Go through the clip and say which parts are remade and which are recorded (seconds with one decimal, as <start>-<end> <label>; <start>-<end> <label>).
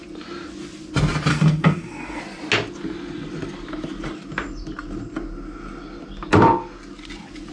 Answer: 0.0-1.3 recorded; 1.3-2.2 remade; 2.2-7.5 recorded